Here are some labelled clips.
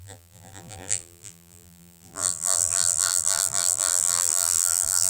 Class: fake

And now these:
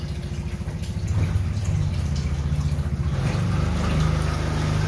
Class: real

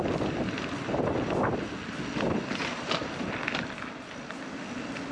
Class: real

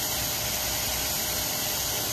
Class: real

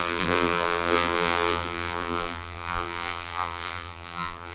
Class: fake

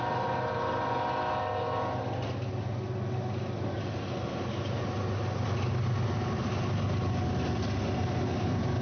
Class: real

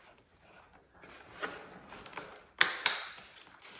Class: real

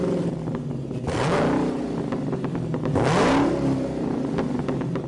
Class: real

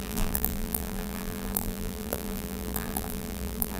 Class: fake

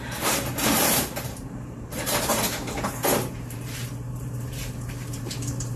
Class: fake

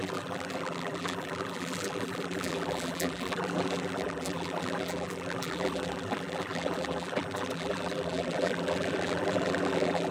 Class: fake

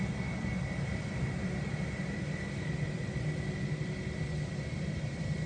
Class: real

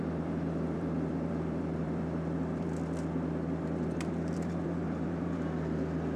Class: fake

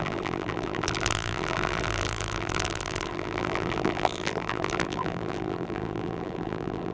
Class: fake